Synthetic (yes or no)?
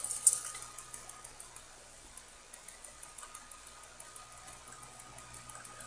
no